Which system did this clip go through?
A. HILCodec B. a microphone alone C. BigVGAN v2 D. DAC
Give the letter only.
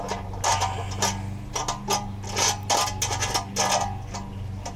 B